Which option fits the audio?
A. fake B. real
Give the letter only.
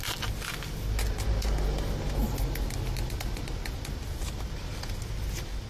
B